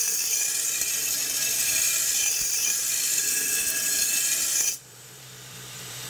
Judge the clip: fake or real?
fake